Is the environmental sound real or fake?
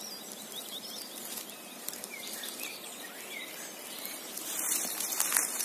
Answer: fake